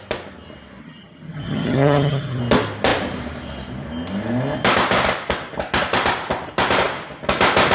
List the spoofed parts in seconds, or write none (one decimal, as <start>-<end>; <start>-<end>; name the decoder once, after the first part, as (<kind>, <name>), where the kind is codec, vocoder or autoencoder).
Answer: 0.8-2.4 (vocoder, HiFi-GAN)